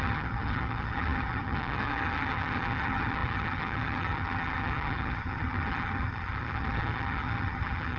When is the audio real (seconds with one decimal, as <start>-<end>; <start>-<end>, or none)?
none